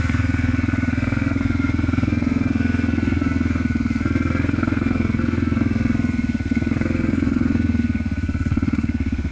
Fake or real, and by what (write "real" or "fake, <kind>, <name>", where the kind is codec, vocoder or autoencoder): fake, codec, SNAC